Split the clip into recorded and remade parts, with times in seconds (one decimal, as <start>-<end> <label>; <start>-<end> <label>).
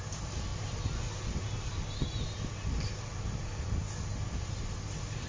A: 0.0-5.3 recorded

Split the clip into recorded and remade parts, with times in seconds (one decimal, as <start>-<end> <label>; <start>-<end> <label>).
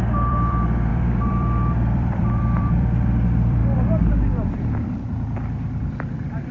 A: 0.0-6.5 remade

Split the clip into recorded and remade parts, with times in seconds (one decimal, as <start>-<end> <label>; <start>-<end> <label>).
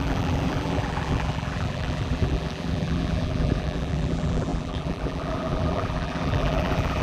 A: 0.0-7.0 remade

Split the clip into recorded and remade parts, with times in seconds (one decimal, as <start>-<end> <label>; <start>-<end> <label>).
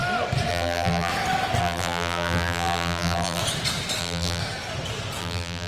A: 0.0-0.5 recorded; 0.5-1.1 remade; 1.1-1.6 recorded; 1.6-3.4 remade; 3.4-4.0 recorded; 4.0-4.4 remade; 4.4-5.2 recorded; 5.2-5.7 remade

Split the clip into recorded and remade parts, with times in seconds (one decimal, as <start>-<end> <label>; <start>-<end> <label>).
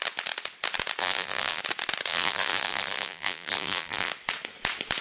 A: 0.0-1.0 recorded; 1.0-1.6 remade; 1.6-2.1 recorded; 2.1-4.1 remade; 4.1-5.0 recorded